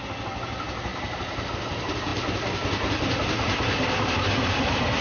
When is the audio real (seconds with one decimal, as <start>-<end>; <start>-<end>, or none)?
0.0-2.1; 4.1-5.0